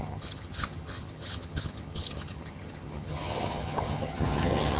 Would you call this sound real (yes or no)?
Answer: no